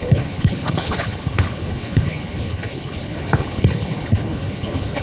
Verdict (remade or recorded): remade